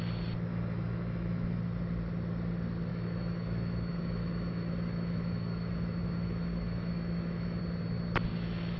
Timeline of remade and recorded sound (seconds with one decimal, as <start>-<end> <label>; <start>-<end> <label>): 0.0-0.5 recorded; 0.5-1.6 remade; 1.6-2.9 recorded; 2.9-7.6 remade; 7.6-8.3 recorded; 8.3-8.8 remade

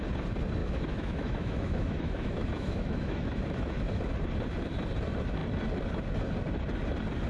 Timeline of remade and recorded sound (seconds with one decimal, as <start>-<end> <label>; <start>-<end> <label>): 0.0-0.6 recorded; 0.6-4.0 remade; 4.0-7.3 recorded